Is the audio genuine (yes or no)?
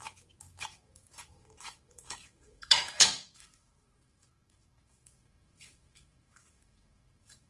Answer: no